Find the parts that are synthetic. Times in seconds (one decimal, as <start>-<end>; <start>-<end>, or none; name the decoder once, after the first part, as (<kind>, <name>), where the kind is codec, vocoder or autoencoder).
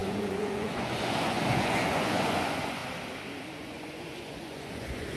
0.0-2.8 (vocoder, Vocos); 3.6-5.2